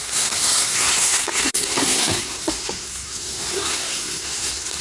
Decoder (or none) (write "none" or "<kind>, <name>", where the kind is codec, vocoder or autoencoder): codec, SNAC